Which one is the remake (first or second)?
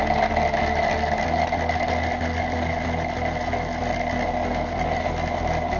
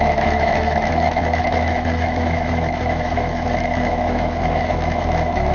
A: second